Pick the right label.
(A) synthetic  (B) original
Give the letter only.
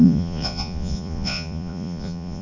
A